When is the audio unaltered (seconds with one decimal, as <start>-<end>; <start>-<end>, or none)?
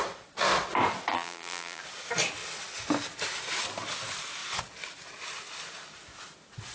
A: 0.0-1.1; 1.8-6.7